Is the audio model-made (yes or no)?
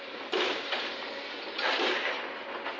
no